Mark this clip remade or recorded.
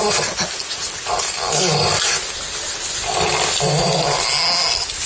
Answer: recorded